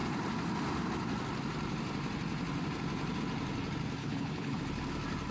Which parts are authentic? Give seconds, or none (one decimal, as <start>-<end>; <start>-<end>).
0.0-4.0; 4.6-5.3